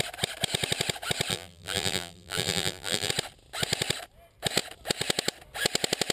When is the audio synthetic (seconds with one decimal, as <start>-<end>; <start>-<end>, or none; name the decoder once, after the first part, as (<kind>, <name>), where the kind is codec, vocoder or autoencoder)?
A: 1.3-3.1 (vocoder, BigVGAN v2)

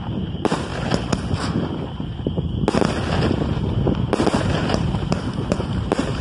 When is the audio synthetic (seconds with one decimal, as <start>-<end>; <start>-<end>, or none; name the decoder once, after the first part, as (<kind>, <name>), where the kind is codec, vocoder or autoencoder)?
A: 0.0-0.7 (vocoder, BigVGAN v2); 4.4-6.2